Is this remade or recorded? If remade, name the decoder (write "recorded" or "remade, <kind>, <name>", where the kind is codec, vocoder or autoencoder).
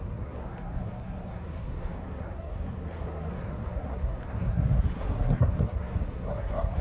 remade, codec, SNAC